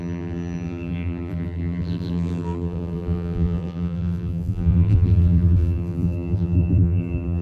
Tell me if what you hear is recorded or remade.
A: remade